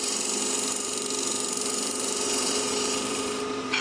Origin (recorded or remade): remade